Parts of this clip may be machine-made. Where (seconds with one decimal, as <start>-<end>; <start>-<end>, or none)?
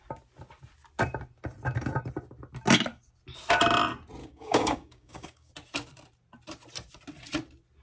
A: 4.2-5.5